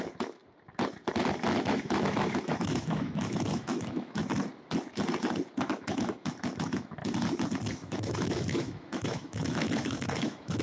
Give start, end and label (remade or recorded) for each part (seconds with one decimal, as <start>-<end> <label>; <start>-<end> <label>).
0.0-0.4 remade; 0.4-1.7 recorded; 1.7-4.2 remade; 4.2-5.6 recorded; 5.6-7.0 remade; 7.0-7.7 recorded; 7.7-10.6 remade